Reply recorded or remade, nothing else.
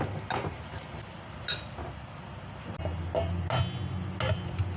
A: recorded